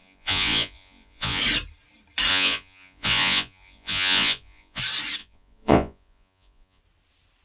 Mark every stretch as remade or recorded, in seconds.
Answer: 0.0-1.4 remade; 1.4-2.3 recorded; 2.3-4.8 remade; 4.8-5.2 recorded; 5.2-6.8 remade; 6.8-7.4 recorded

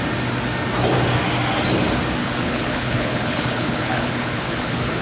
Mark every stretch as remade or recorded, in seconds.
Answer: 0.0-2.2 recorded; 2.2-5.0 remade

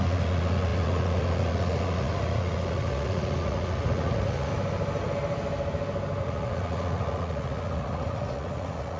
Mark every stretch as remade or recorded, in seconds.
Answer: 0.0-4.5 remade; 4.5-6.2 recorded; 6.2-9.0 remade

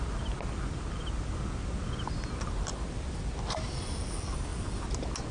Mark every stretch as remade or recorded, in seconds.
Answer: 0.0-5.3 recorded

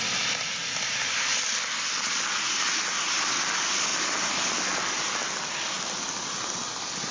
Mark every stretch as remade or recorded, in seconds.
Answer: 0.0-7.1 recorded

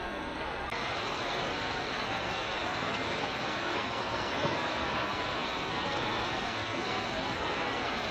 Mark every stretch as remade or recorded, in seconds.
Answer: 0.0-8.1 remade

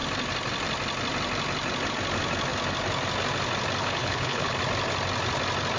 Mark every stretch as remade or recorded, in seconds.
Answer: 0.0-3.8 recorded; 3.8-4.6 remade; 4.6-5.8 recorded